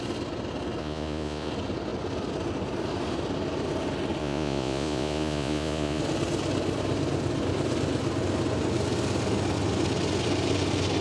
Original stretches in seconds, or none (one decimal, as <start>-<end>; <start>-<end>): 0.0-0.8; 1.5-4.2; 6.0-11.0